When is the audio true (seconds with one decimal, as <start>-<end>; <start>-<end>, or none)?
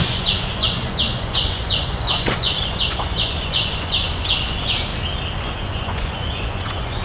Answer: 4.9-5.4